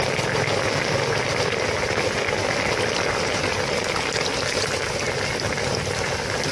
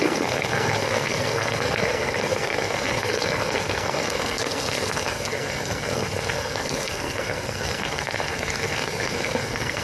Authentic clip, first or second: first